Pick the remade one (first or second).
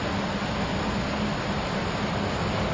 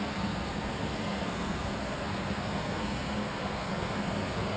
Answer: second